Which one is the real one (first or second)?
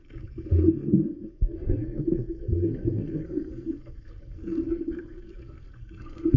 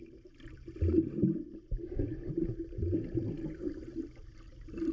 second